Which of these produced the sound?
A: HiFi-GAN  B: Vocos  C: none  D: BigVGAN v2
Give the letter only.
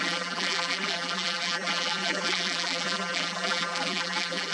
D